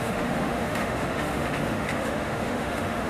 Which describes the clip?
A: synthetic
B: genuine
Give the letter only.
A